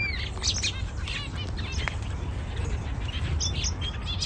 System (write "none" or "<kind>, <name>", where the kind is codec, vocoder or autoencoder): none